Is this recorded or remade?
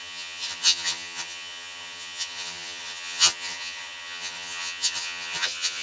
remade